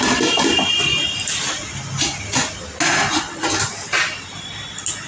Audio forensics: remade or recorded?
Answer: recorded